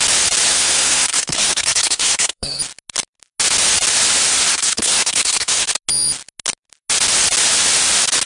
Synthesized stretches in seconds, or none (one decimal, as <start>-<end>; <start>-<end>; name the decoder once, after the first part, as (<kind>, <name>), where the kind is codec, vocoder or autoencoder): 0.5-2.6 (codec, SNAC); 4.5-5.7